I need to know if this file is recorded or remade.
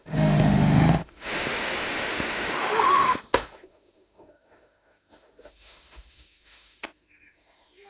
remade